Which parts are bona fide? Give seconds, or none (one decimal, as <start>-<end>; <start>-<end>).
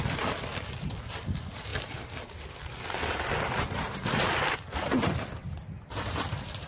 0.0-6.7